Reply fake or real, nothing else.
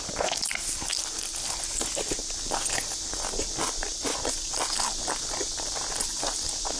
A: real